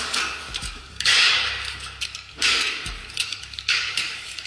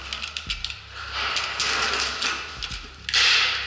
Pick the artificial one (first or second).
first